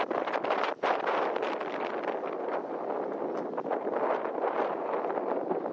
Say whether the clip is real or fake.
real